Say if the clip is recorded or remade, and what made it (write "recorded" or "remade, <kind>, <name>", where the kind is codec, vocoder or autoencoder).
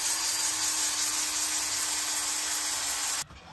recorded